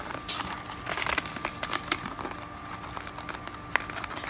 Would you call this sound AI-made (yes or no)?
no